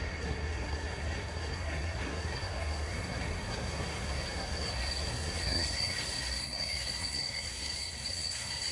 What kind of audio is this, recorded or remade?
remade